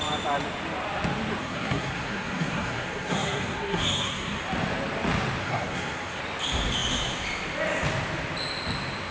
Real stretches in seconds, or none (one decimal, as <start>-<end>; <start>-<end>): 0.0-1.4; 4.4-5.4; 6.2-9.1